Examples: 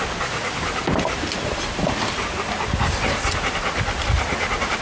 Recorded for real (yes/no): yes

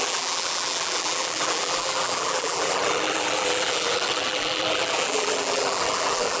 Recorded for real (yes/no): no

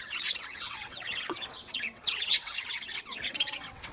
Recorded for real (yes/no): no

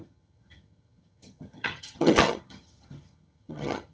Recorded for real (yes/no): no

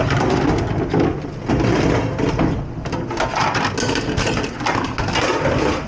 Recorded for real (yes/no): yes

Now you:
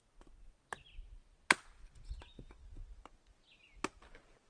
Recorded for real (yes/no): yes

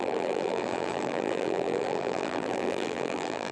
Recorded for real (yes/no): no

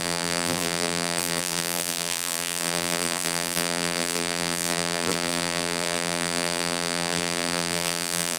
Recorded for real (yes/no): no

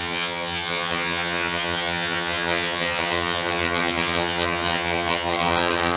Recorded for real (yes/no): no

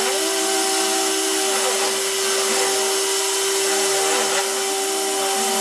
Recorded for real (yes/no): yes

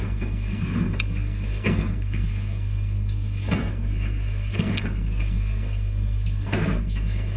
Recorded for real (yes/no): no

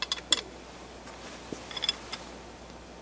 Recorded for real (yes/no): yes